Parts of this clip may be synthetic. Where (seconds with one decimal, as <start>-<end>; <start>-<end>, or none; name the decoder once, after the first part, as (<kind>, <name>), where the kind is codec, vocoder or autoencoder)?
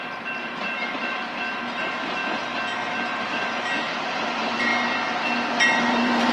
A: 0.0-2.2 (vocoder, BigVGAN v2); 3.8-4.7; 5.8-6.3